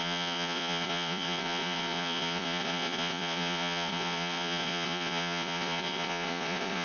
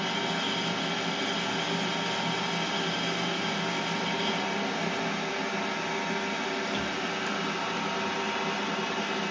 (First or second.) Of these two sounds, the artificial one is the first